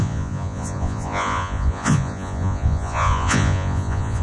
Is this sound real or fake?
fake